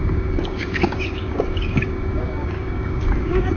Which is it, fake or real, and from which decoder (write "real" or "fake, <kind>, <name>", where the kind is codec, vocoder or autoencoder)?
fake, codec, DAC